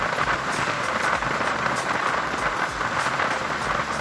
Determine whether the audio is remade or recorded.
recorded